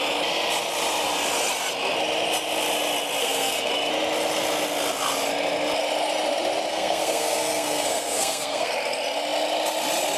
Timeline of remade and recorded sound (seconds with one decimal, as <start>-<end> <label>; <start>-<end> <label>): 0.0-3.2 recorded; 3.2-3.7 remade; 3.7-6.7 recorded; 6.7-8.7 remade; 8.7-10.2 recorded